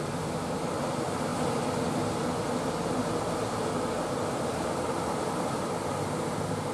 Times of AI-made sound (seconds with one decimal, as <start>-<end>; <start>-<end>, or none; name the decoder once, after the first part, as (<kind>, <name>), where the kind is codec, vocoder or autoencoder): none